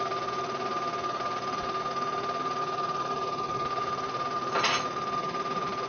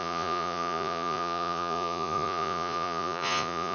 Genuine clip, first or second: first